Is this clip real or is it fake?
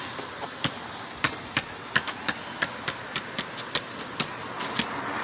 real